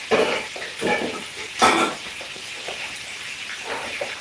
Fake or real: fake